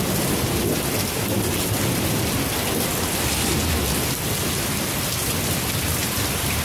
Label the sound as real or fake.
real